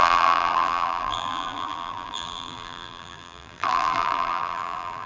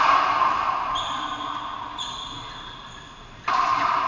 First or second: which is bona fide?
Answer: second